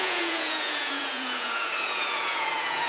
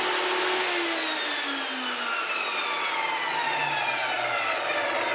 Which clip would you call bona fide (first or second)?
second